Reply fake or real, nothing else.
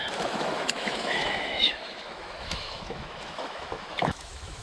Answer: fake